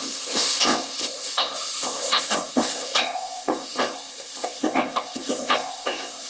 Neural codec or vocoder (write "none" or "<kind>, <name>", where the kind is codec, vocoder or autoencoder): codec, ZipCodec